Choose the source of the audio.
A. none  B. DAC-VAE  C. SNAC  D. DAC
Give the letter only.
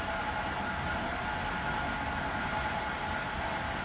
A